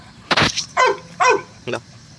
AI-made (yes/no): yes